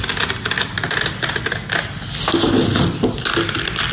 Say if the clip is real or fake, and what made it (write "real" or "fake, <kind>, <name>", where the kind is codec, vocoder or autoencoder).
real